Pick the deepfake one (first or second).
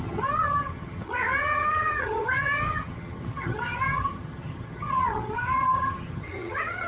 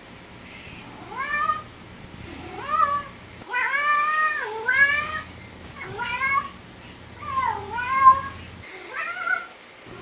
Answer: first